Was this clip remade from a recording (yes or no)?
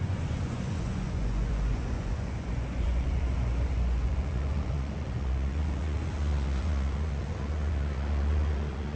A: yes